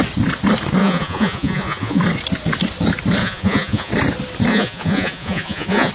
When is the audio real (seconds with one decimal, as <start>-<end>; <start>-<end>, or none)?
0.0-0.8; 2.0-3.2; 3.9-4.5